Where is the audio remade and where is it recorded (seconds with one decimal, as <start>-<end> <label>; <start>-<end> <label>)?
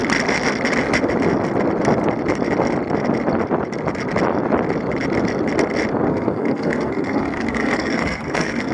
0.0-6.1 recorded; 6.1-8.7 remade